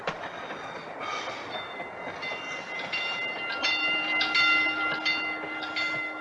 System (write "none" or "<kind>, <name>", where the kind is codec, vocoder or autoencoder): none